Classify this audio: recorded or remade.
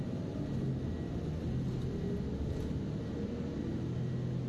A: recorded